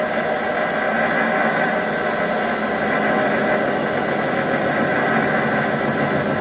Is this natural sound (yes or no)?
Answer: yes